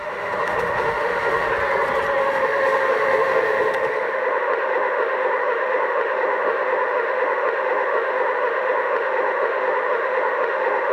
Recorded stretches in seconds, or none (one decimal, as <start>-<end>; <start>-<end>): 1.5-2.2